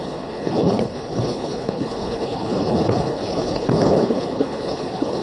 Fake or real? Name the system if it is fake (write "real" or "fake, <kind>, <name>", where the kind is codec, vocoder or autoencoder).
fake, codec, HILCodec